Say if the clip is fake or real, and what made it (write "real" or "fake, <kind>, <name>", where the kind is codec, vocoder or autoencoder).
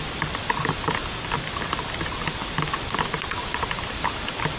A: fake, vocoder, BigVGAN v2